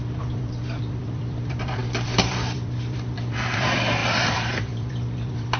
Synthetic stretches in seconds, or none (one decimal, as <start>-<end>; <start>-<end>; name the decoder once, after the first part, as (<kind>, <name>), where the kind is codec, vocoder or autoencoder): 0.0-5.6 (vocoder, BigVGAN v2)